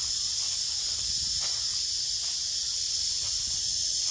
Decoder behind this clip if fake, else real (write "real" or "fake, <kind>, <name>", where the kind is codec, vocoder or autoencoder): real